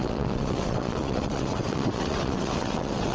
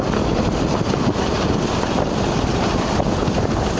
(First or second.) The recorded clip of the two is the second